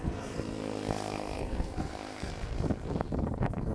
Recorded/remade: remade